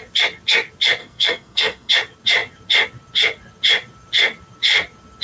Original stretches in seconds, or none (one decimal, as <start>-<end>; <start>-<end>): 0.0-1.0; 1.9-5.2